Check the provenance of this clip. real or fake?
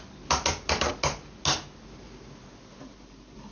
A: real